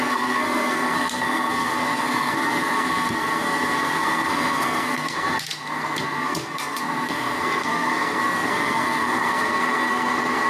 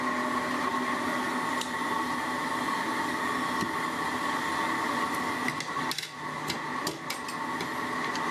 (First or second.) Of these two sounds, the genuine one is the second